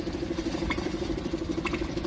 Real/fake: fake